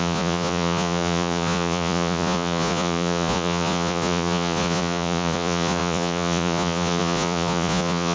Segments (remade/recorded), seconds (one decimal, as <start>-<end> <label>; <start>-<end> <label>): 0.0-8.1 remade